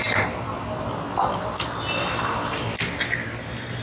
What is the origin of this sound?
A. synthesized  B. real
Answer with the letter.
B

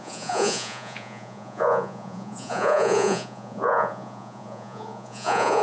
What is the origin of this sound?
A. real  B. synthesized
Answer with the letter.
B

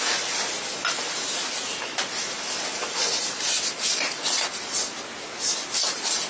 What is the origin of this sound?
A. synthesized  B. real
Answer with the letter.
B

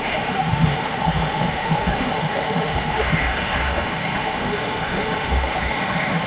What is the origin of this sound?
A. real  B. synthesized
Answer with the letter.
B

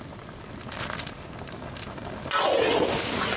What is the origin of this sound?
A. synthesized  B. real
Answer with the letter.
B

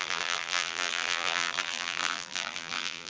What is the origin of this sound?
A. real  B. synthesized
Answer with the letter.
B